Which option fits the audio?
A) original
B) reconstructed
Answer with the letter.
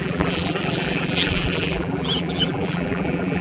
B